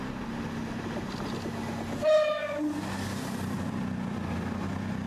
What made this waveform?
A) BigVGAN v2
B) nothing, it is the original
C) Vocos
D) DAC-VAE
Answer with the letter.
B